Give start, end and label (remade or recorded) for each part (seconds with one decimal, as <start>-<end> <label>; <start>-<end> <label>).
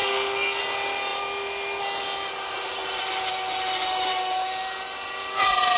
0.0-0.6 remade; 0.6-5.8 recorded